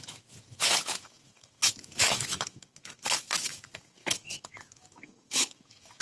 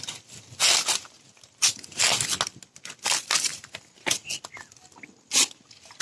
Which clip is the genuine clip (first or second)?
second